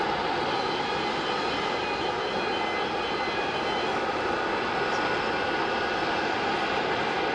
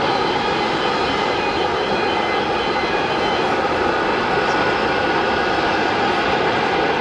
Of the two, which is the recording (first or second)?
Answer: first